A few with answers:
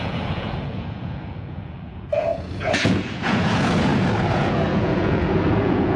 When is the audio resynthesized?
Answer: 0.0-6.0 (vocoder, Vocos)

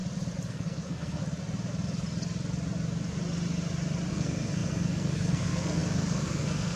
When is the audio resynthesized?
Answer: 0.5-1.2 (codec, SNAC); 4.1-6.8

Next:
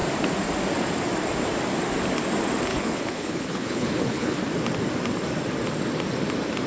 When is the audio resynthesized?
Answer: 2.7-4.4 (codec, HILCodec)

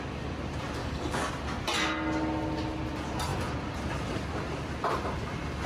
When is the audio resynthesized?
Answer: 0.8-1.3 (codec, DAC)